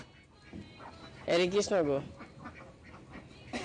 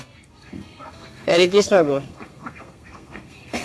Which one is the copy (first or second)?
second